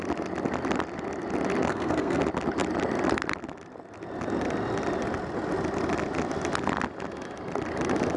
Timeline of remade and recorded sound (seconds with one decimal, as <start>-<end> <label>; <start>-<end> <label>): 0.0-1.7 recorded; 1.7-2.2 remade; 2.2-8.2 recorded